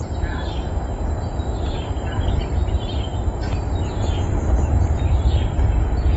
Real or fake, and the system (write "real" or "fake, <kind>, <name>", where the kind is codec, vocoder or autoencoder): fake, vocoder, BigVGAN v2